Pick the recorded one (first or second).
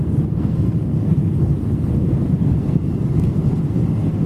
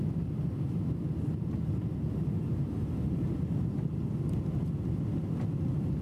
second